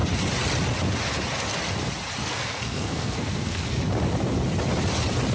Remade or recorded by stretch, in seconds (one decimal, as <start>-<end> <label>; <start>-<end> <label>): 0.0-2.2 recorded; 2.2-3.8 remade; 3.8-5.3 recorded